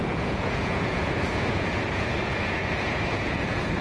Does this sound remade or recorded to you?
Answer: remade